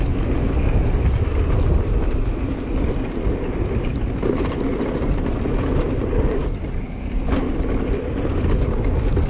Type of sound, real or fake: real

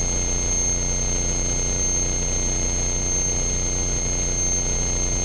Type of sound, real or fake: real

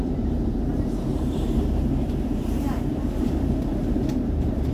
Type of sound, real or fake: fake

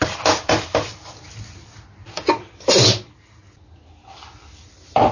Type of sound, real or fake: real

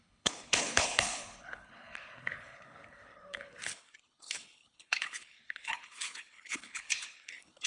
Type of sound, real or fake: fake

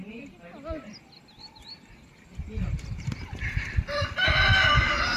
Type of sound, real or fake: real